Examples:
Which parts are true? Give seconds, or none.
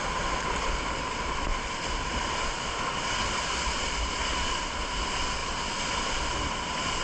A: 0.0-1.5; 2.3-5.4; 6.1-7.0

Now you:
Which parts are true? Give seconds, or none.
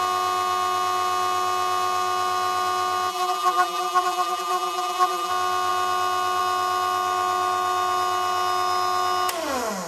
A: 0.0-3.1; 5.3-9.9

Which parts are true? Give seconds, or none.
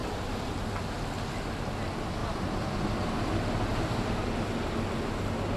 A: 0.7-2.2; 3.3-3.7; 4.3-5.6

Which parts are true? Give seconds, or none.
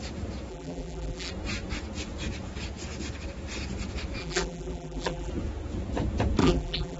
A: 0.0-0.5; 1.3-4.2; 5.3-6.4